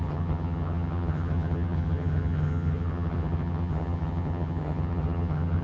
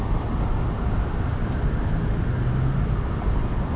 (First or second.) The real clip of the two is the second